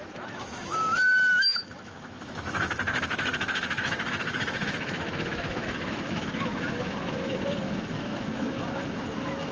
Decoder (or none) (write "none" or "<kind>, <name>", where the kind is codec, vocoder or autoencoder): autoencoder, DAC-VAE